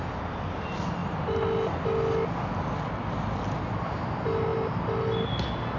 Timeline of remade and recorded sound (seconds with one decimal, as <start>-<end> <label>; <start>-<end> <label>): 0.0-5.8 recorded